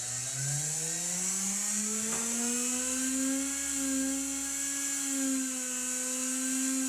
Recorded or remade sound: recorded